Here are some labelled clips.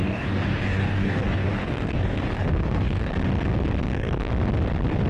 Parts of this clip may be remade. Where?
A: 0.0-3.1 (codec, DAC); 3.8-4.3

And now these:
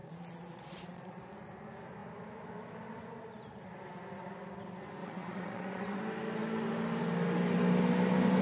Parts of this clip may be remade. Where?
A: 0.0-1.2 (vocoder, Vocos); 5.0-6.0

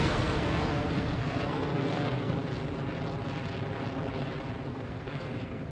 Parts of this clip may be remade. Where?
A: 0.0-2.4 (codec, SNAC); 4.7-5.7

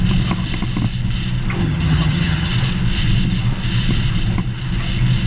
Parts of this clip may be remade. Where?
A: 1.6-2.5 (vocoder, HiFi-GAN)

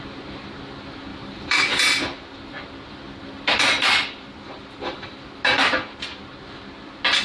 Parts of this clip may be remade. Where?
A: 1.1-5.4 (vocoder, BigVGAN v2)

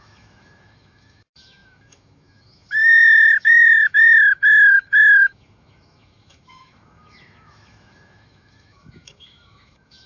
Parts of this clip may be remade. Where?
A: 0.0-10.1 (autoencoder, DAC-VAE)

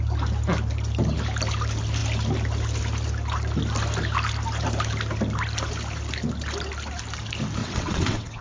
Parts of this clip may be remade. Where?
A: 7.6-8.4 (vocoder, WaveNeXt)